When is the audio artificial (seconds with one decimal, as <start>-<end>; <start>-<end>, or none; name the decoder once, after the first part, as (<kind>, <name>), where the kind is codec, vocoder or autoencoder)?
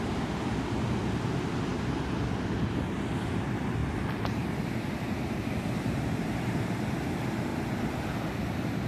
3.8-4.7 (vocoder, BigVGAN v2)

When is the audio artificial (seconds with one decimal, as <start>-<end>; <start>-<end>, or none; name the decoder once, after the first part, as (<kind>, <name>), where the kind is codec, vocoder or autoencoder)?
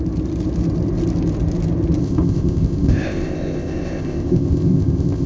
2.0-5.3 (codec, ZipCodec)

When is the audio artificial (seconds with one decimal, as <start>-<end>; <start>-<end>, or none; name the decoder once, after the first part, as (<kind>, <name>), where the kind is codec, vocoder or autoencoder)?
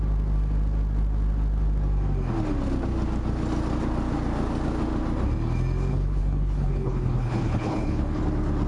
5.9-8.2 (codec, HILCodec)